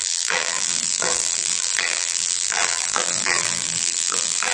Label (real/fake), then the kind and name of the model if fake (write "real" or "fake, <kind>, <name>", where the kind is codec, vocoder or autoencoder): fake, vocoder, BigVGAN v2